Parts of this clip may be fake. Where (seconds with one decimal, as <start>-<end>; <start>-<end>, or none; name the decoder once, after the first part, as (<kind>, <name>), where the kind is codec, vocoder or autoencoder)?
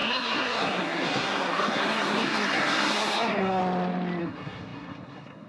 0.0-3.6 (codec, SNAC); 4.2-5.5